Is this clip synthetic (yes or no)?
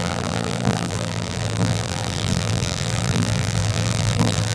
yes